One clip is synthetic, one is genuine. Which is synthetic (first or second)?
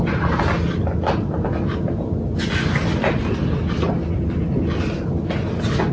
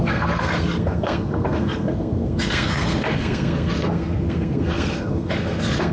second